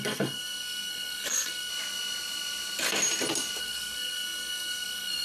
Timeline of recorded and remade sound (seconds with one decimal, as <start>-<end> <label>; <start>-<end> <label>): 0.0-1.7 remade; 1.7-3.6 recorded; 3.6-5.2 remade